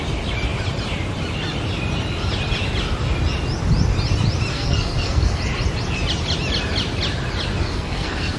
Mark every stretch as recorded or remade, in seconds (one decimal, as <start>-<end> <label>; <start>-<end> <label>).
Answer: 0.0-4.5 recorded; 4.5-5.4 remade; 5.4-7.6 recorded; 7.6-8.4 remade